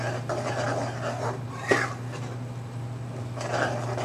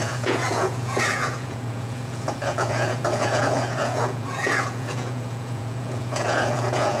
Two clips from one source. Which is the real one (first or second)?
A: first